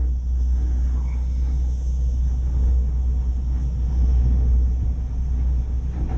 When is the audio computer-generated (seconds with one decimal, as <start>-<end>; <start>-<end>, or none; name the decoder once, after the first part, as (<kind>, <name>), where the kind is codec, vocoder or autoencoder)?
none